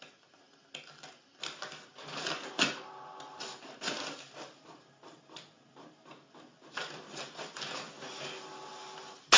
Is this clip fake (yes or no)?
no